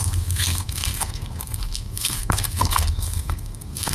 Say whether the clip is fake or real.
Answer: fake